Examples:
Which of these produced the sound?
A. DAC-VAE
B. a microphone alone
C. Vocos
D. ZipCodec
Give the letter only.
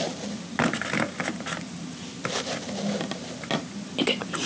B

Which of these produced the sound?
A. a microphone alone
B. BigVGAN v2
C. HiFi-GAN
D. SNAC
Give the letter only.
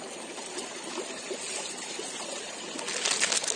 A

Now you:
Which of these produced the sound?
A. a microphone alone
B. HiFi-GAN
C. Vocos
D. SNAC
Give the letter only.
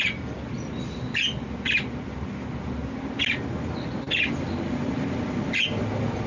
A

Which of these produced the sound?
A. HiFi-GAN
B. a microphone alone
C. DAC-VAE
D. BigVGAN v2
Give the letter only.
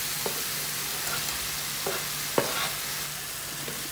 B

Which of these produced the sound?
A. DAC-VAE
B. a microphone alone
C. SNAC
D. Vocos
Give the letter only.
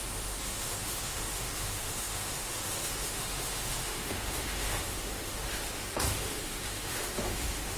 A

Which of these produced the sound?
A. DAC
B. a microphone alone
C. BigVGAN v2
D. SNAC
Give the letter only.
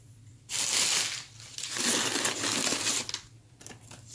B